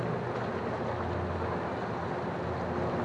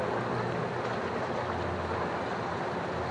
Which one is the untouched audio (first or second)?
first